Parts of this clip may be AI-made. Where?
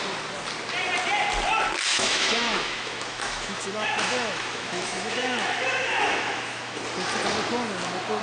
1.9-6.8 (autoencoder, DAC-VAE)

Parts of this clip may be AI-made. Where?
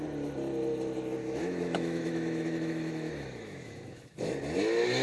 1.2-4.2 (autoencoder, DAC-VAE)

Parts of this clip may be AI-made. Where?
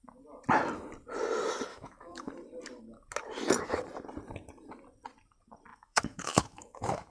1.7-2.3 (autoencoder, DAC-VAE); 5.7-7.1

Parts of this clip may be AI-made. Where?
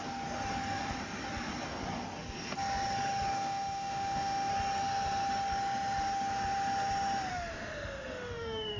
3.3-4.5 (autoencoder, DAC-VAE); 7.3-8.8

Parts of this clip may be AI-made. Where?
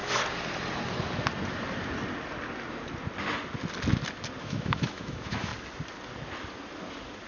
4.4-5.5 (autoencoder, DAC-VAE)